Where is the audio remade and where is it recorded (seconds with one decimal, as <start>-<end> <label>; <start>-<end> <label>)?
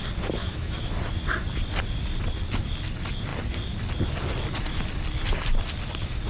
0.0-0.4 recorded; 0.4-0.9 remade; 0.9-6.3 recorded